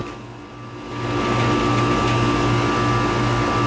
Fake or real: real